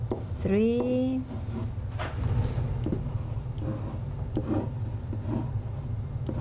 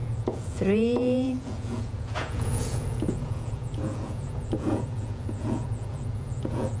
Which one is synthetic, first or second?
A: second